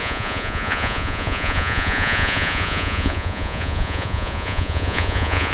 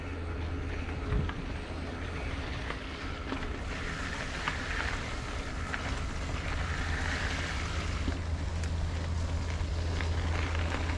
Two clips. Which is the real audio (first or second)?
second